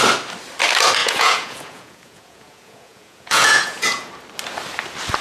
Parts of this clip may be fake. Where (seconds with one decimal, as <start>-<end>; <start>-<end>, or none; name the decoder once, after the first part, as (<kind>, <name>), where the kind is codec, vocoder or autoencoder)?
1.0-4.1 (vocoder, Vocos)